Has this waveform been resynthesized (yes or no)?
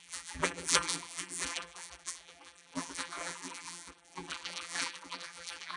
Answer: yes